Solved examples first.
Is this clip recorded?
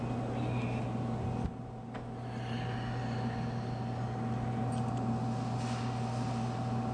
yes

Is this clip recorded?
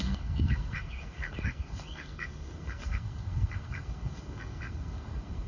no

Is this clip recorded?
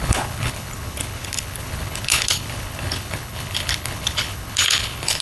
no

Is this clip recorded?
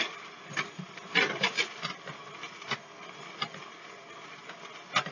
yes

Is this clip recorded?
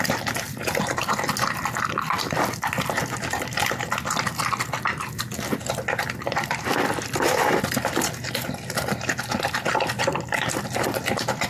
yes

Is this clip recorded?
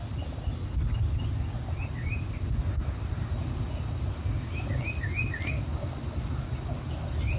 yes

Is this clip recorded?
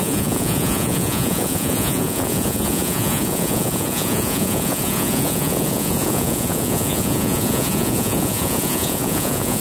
no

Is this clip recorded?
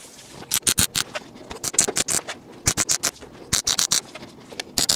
yes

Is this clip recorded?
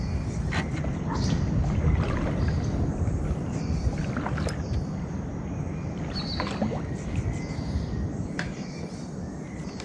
yes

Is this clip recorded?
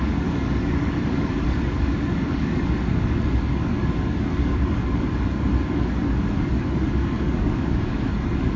no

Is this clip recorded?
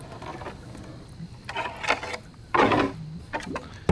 yes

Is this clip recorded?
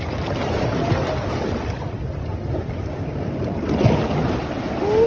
yes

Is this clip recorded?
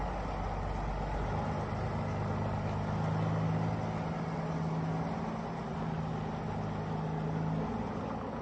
yes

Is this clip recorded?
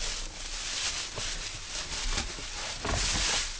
yes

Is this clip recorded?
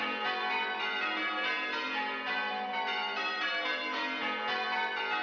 yes